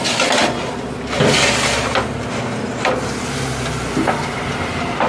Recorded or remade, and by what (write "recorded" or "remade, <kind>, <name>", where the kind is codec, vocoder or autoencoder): recorded